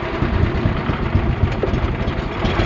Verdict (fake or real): real